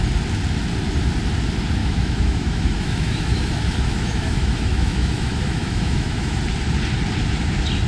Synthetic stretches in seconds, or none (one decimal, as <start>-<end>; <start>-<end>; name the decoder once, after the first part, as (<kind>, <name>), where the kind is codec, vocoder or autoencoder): 1.8-6.4 (autoencoder, DAC-VAE)